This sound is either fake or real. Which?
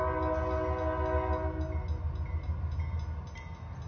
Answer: real